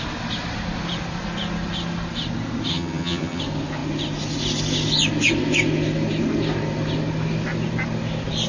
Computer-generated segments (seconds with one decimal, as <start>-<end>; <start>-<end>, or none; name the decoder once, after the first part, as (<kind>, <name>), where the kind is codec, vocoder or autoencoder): 2.7-3.4 (vocoder, HiFi-GAN)

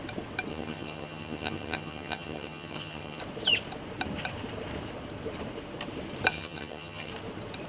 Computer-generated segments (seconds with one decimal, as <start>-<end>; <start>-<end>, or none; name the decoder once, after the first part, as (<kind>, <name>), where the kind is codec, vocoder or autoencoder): 0.5-3.2 (vocoder, HiFi-GAN); 6.3-7.1

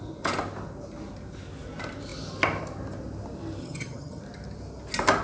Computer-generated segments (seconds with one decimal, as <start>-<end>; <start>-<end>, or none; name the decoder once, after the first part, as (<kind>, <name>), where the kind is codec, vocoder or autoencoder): 3.6-4.2 (vocoder, HiFi-GAN)

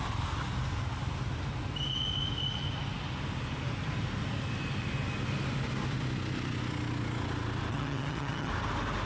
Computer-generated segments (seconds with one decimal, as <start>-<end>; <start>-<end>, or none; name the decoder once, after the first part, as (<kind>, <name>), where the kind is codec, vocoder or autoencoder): 7.7-8.5 (vocoder, HiFi-GAN)

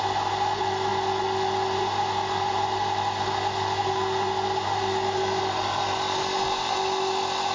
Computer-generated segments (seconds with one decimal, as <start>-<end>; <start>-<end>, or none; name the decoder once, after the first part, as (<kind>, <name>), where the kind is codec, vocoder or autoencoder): none

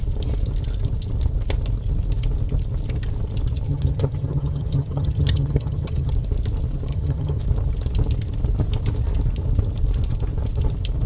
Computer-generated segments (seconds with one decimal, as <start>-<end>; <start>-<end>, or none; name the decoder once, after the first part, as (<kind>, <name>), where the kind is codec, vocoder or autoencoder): 3.7-6.1 (vocoder, HiFi-GAN); 6.9-7.4

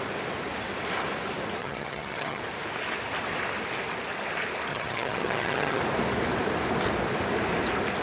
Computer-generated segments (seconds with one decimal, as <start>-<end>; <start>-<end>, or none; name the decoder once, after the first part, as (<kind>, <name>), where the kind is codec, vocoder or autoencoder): 1.6-2.4 (vocoder, HiFi-GAN); 4.7-5.8